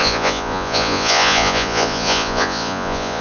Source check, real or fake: fake